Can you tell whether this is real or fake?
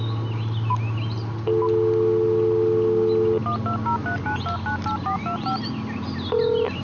real